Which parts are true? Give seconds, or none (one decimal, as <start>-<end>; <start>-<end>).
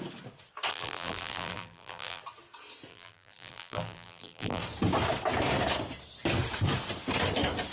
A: 0.0-0.7; 2.2-2.9; 4.6-7.7